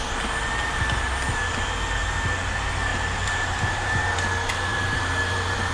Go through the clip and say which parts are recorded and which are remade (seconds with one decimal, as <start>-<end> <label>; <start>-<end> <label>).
0.0-2.9 recorded; 2.9-3.9 remade; 3.9-4.7 recorded; 4.7-5.7 remade